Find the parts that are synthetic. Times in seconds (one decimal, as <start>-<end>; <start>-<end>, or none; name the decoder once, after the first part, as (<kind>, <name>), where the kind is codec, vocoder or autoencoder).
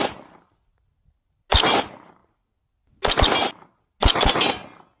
none